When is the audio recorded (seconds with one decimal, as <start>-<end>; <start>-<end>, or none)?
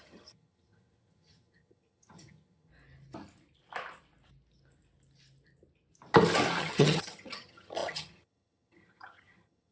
2.7-6.6